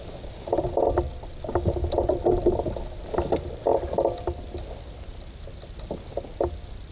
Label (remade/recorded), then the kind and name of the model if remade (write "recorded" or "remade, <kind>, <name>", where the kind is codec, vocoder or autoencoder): recorded